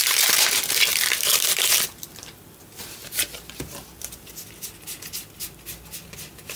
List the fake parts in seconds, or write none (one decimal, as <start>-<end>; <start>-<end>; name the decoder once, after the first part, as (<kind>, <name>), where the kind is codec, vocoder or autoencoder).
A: 0.9-4.5 (vocoder, BigVGAN v2)